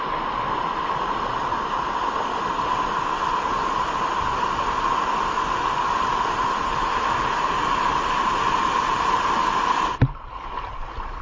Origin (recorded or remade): recorded